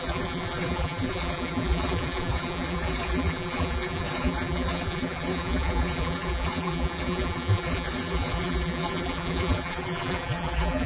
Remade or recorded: remade